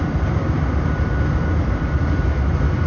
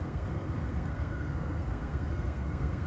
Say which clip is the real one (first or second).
first